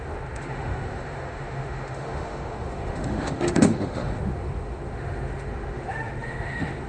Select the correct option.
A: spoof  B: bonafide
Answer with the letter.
A